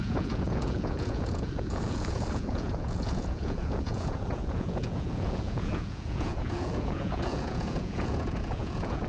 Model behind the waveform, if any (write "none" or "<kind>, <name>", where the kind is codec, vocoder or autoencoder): vocoder, Vocos